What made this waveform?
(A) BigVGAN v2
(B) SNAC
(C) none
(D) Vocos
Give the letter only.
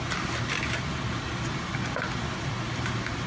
C